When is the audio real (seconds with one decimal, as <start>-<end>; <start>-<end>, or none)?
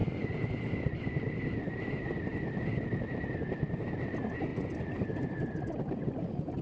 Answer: 0.0-6.6